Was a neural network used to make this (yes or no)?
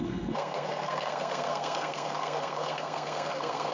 yes